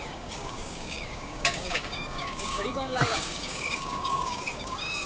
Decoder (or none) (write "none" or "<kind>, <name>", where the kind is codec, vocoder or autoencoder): codec, DAC